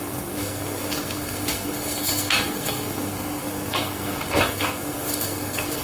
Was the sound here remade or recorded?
remade